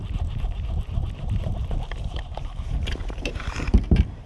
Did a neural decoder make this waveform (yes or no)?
yes